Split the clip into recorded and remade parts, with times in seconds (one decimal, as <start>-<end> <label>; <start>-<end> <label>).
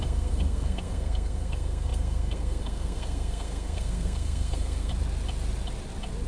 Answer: 0.0-4.9 remade; 4.9-6.3 recorded